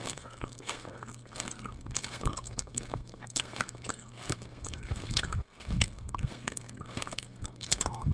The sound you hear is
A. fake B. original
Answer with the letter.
A